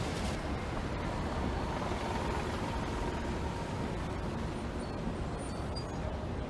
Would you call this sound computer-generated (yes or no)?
no